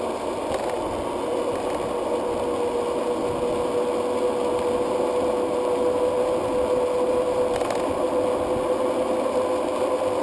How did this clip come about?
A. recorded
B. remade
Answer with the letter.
A